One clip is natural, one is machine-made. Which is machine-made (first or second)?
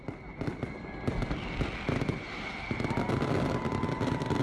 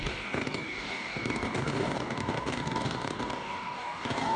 second